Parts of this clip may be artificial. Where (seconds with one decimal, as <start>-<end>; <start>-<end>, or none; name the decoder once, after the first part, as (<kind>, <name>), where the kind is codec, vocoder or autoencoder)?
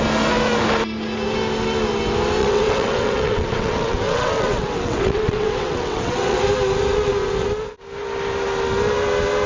2.4-6.4 (vocoder, WaveNeXt)